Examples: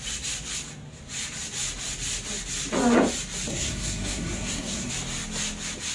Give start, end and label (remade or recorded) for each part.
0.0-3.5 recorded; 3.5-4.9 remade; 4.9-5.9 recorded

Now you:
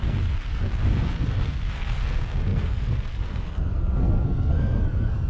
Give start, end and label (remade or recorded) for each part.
0.0-5.3 remade

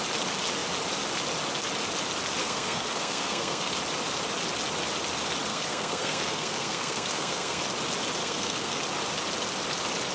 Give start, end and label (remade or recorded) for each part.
0.0-2.4 recorded; 2.4-3.7 remade; 3.7-5.5 recorded; 5.5-7.6 remade; 7.6-8.2 recorded; 8.2-8.8 remade; 8.8-10.1 recorded

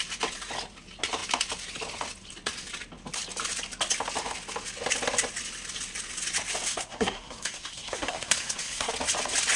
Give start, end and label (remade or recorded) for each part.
0.0-6.7 recorded; 6.7-8.9 remade; 8.9-9.6 recorded

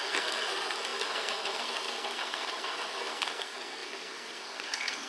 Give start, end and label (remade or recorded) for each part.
0.0-5.1 remade

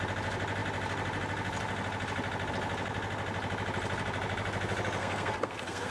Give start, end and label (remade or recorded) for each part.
0.0-5.0 recorded; 5.0-5.9 remade

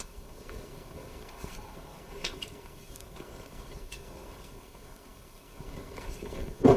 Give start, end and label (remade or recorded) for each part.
0.0-6.8 remade